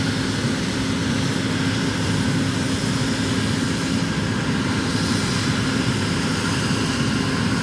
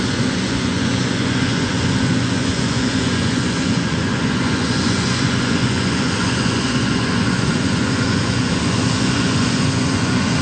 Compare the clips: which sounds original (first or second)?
first